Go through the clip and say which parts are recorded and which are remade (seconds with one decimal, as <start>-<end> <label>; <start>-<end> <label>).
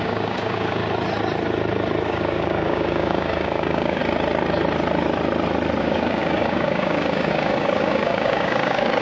0.0-0.8 remade; 0.8-2.0 recorded; 2.0-4.0 remade; 4.0-5.8 recorded; 5.8-9.0 remade